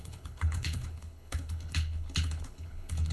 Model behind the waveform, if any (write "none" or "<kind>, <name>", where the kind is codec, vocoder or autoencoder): codec, HILCodec